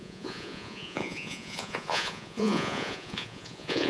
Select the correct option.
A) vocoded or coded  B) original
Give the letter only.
A